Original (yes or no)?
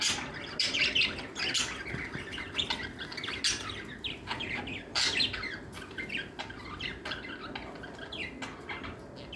yes